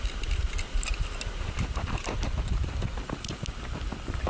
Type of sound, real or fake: real